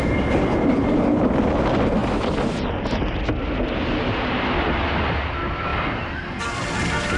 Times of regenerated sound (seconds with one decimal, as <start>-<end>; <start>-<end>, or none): none